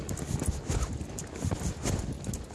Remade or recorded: recorded